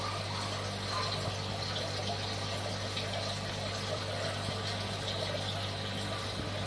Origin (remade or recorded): recorded